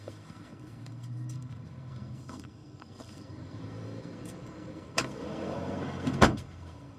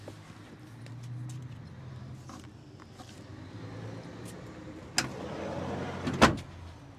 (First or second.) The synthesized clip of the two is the first